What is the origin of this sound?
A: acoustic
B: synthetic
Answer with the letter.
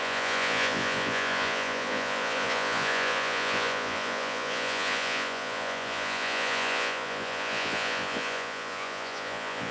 B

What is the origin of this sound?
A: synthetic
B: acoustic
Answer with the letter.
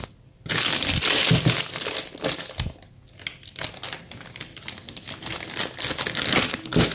B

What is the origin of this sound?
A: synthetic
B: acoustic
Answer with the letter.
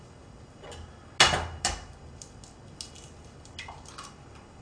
B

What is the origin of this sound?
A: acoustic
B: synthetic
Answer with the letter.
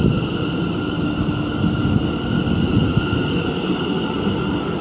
A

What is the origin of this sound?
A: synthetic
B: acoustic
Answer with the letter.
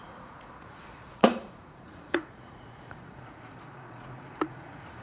A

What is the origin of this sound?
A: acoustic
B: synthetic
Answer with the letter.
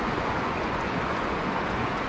B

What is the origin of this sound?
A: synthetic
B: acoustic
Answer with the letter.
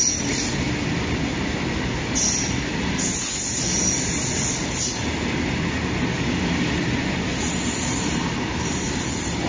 B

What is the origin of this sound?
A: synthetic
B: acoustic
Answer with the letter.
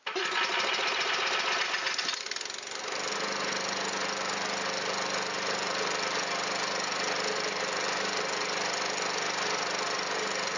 B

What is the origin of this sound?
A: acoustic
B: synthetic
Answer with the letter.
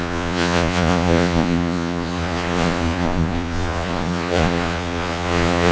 B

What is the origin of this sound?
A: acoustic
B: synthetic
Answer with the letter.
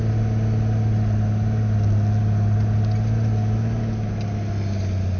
A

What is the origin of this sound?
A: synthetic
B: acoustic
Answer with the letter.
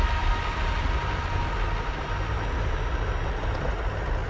B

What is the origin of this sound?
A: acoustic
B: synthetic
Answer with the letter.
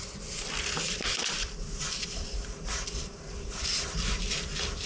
A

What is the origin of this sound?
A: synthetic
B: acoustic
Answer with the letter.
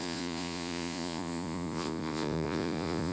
A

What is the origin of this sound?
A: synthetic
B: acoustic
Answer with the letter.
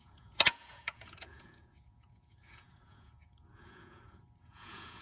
A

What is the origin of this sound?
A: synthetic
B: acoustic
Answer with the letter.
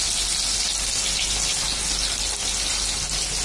B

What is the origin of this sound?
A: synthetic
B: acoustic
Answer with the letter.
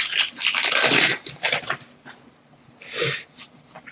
B